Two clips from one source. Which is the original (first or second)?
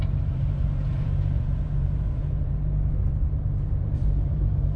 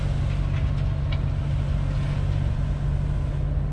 second